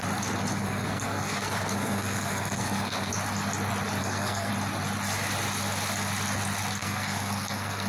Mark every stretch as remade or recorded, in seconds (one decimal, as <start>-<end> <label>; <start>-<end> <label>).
0.0-0.5 recorded; 0.5-3.1 remade; 3.1-4.0 recorded; 4.0-4.5 remade; 4.5-6.8 recorded; 6.8-7.9 remade